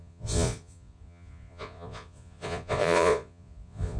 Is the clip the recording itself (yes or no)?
no